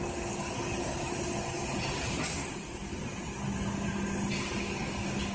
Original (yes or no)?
yes